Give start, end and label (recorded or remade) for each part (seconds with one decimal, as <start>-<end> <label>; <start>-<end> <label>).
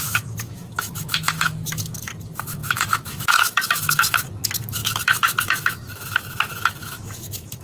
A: 0.0-7.6 remade